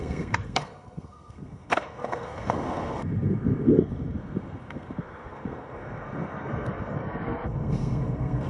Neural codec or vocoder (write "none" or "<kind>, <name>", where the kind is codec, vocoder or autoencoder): codec, SNAC